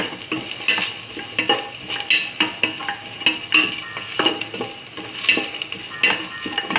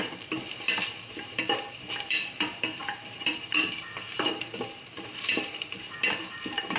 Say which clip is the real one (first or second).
first